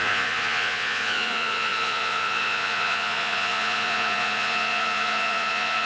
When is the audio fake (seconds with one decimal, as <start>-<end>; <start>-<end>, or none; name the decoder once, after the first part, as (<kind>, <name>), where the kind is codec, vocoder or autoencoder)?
0.0-5.9 (vocoder, Vocos)